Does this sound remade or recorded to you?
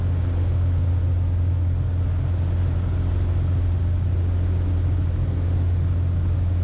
recorded